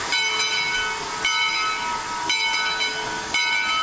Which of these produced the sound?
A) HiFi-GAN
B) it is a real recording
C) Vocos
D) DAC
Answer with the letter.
B